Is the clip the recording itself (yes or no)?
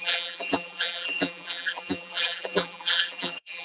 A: no